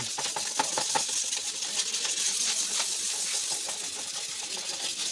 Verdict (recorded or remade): recorded